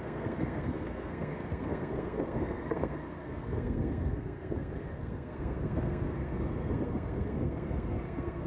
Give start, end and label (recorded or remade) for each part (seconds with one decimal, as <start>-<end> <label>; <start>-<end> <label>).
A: 0.0-8.5 remade